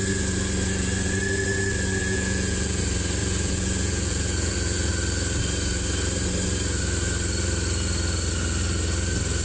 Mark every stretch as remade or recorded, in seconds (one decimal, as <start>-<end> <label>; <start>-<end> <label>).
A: 0.0-2.0 recorded; 2.0-2.8 remade; 2.8-3.2 recorded; 3.2-4.9 remade; 4.9-9.4 recorded